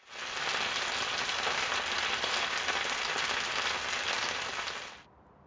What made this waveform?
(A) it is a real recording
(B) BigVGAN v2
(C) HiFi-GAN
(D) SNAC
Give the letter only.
A